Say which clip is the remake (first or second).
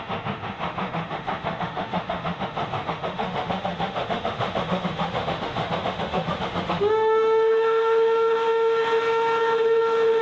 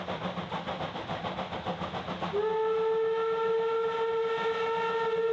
first